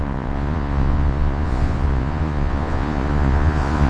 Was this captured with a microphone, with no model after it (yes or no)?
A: no